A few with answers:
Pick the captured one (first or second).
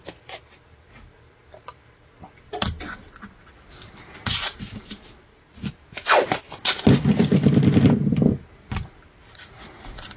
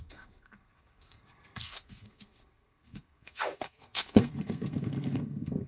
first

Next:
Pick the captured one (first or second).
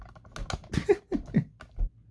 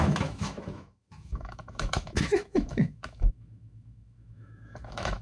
first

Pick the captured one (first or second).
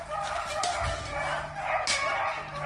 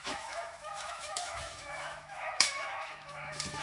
first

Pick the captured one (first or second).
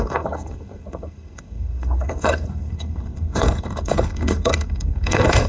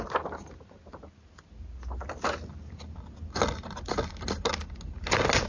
second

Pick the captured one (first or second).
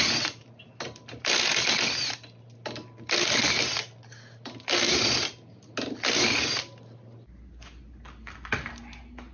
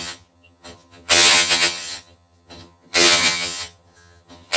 first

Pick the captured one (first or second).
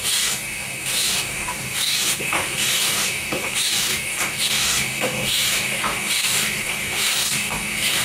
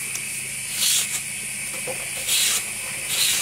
second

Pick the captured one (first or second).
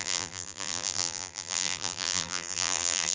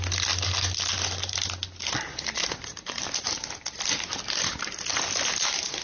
second